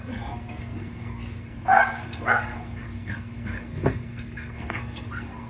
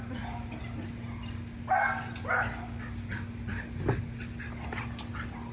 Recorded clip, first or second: second